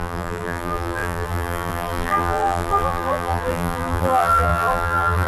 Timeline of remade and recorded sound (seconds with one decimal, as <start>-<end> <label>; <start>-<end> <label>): 0.0-5.3 remade